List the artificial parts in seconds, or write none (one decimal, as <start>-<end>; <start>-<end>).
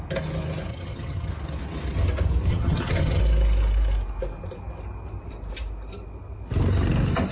0.7-1.3; 2.5-3.2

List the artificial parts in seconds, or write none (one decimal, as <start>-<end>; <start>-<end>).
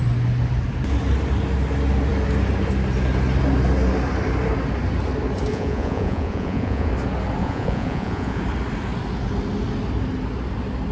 5.5-6.9; 7.4-8.4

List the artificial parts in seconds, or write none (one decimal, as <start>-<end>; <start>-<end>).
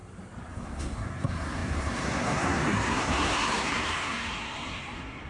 0.5-5.3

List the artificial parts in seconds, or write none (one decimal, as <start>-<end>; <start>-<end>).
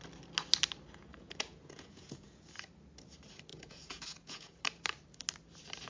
1.1-2.5; 3.5-4.6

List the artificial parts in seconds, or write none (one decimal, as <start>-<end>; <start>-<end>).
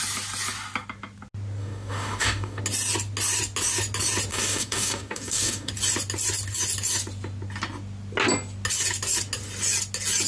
1.6-2.6; 4.3-5.7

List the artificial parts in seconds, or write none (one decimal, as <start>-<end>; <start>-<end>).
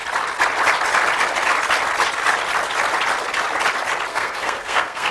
4.1-5.1